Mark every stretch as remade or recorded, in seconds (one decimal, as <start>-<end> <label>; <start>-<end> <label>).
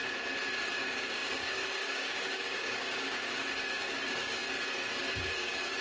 0.0-0.7 recorded; 0.7-5.8 remade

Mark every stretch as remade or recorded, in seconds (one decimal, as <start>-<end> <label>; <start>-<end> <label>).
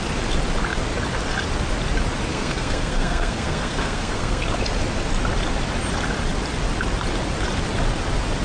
0.0-2.3 recorded; 2.3-4.4 remade; 4.4-8.4 recorded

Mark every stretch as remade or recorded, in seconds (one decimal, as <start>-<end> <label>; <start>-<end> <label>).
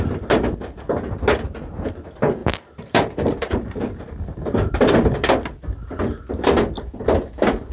0.0-2.4 recorded; 2.4-4.7 remade; 4.7-7.7 recorded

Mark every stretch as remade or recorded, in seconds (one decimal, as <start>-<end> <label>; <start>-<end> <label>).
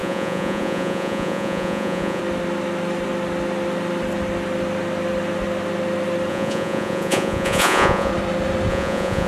0.0-2.2 remade; 2.2-6.3 recorded; 6.3-8.1 remade; 8.1-8.7 recorded; 8.7-9.3 remade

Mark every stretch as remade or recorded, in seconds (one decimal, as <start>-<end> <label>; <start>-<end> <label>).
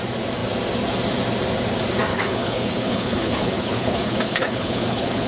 0.0-2.1 recorded; 2.1-5.3 remade